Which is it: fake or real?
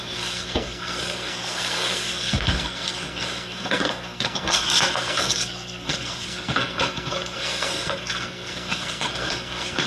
fake